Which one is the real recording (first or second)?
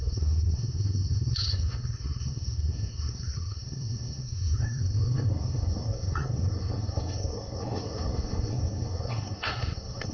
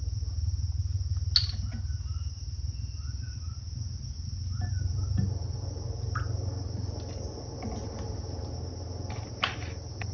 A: second